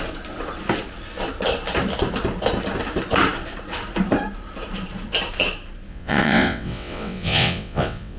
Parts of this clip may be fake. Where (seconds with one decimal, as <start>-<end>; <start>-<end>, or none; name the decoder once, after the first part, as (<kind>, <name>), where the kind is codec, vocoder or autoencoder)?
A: 5.9-8.2 (vocoder, WaveNeXt)